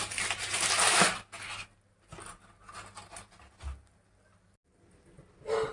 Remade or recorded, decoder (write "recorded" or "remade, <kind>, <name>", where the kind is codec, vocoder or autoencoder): recorded